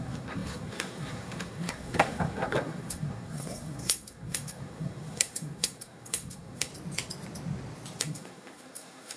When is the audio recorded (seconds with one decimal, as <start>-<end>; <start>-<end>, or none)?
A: 6.7-8.0

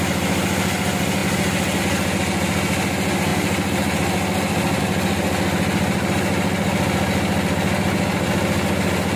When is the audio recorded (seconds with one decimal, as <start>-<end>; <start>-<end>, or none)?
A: 0.0-9.2

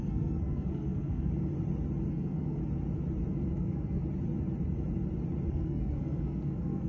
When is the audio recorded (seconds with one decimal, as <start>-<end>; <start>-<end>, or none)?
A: 1.3-2.1; 2.6-3.5; 4.0-5.5

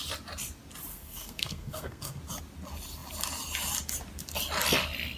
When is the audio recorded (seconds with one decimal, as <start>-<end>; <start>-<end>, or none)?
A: 0.0-0.9; 2.2-5.2

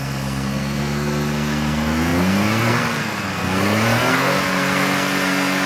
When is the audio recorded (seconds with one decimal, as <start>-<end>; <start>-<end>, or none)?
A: none

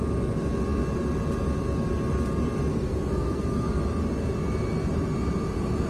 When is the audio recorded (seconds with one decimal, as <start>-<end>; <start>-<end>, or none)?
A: 0.0-2.7; 3.8-5.9

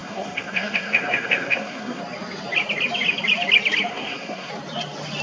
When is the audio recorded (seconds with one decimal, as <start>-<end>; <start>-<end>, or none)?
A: 2.0-3.9; 4.5-5.2

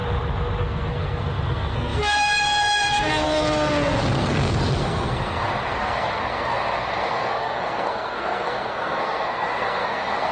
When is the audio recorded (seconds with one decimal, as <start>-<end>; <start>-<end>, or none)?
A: 0.0-0.6